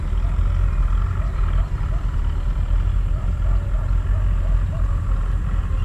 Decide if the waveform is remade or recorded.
recorded